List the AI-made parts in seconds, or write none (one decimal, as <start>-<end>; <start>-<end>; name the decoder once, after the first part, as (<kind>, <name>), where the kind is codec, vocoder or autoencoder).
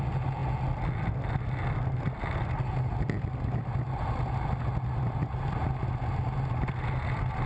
none